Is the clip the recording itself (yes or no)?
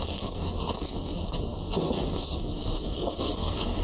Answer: no